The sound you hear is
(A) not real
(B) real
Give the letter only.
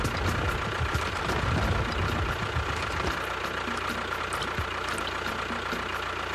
B